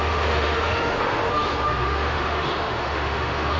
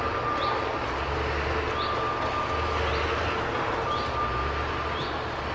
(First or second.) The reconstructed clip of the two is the first